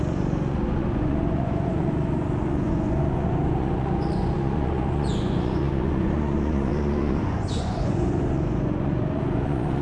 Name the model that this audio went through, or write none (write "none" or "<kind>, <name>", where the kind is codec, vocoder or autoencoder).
vocoder, Vocos